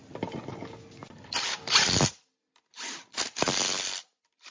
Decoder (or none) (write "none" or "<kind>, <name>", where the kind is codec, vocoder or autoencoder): none